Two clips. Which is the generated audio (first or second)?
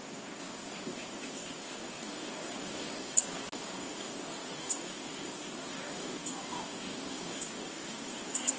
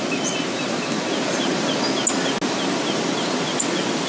first